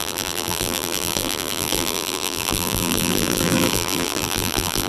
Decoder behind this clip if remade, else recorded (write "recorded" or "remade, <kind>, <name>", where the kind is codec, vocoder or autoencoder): remade, vocoder, BigVGAN v2